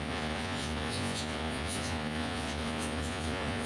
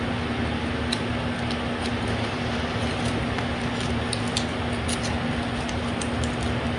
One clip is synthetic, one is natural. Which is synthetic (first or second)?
first